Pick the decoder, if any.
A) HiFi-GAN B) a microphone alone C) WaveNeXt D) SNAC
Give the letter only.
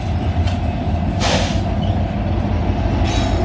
B